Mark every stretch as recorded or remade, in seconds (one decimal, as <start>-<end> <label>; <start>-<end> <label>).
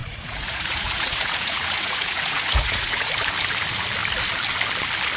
0.0-3.1 remade; 3.1-5.2 recorded